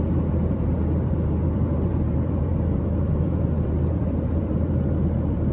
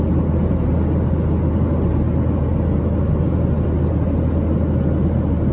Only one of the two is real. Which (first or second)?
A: second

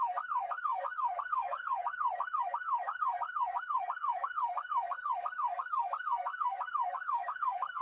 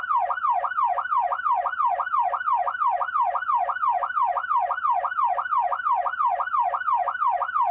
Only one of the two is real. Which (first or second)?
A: second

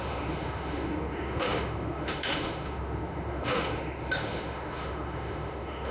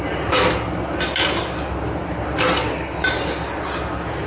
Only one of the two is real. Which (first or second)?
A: second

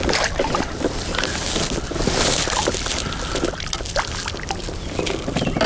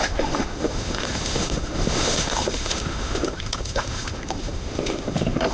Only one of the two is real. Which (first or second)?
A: first